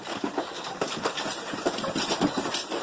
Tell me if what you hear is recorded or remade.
recorded